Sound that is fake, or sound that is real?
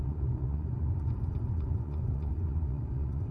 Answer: fake